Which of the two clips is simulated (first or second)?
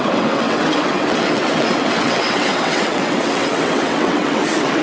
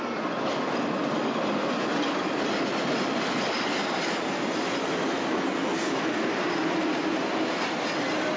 first